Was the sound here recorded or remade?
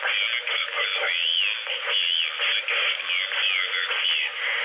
recorded